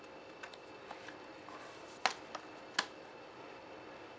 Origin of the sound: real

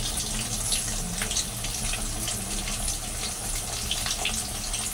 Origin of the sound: real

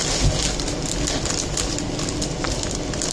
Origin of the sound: real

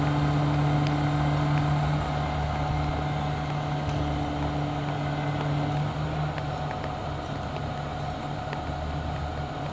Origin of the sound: real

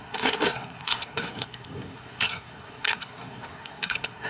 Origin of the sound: fake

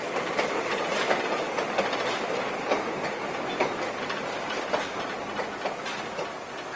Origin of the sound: real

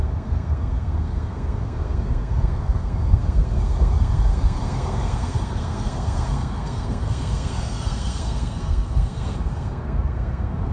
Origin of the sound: fake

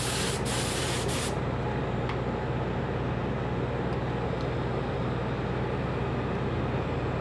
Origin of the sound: real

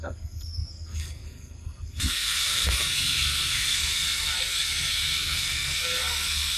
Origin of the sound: fake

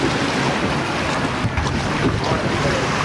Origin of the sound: real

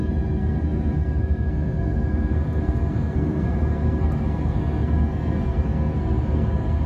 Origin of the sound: fake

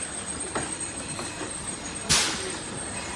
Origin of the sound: real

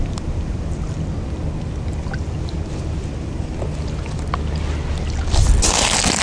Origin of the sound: real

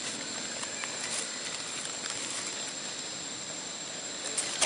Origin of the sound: real